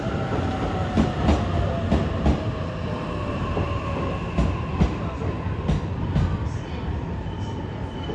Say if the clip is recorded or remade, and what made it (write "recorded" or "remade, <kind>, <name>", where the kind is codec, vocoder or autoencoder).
recorded